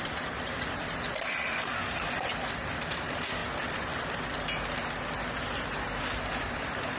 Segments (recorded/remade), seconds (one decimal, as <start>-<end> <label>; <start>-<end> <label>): 0.0-3.4 remade; 3.4-6.0 recorded; 6.0-7.0 remade